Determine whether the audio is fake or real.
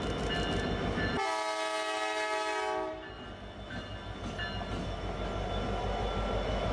real